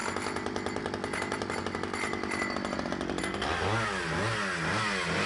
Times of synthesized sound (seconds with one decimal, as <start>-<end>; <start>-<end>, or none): none